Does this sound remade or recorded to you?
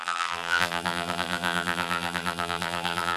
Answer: remade